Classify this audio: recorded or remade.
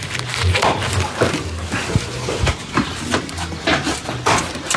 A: recorded